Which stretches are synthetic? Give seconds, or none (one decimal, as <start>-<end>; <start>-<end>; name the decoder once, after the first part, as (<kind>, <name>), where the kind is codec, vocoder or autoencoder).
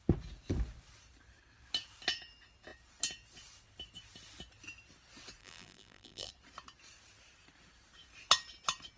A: 5.4-6.3 (vocoder, BigVGAN v2)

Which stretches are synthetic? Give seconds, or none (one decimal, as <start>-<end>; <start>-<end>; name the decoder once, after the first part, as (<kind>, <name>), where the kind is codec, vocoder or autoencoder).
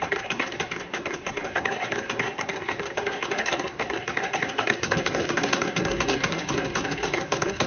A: 0.0-7.7 (codec, SNAC)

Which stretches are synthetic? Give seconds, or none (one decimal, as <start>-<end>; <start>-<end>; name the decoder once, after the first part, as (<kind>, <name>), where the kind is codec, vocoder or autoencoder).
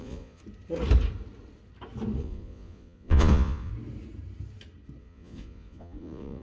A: 0.0-0.4 (vocoder, Vocos); 2.2-3.7; 5.0-6.4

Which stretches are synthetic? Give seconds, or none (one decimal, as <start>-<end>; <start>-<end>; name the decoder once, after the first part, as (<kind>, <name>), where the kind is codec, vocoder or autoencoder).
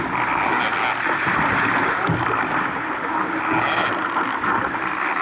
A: none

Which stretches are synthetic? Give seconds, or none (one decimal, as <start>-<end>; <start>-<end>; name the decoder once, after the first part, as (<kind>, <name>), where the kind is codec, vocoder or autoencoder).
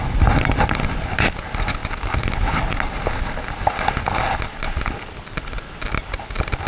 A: none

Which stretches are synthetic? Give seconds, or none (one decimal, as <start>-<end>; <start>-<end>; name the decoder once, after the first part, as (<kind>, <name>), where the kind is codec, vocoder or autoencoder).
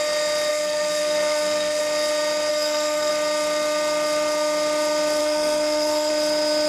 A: 0.5-1.8 (codec, SNAC); 2.5-3.1; 5.2-6.1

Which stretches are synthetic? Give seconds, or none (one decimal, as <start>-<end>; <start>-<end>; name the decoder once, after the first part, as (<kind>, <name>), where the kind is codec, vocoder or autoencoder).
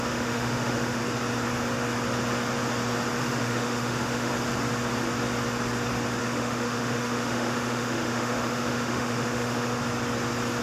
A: 0.0-1.0 (autoencoder, DAC-VAE); 3.2-4.3; 6.2-9.8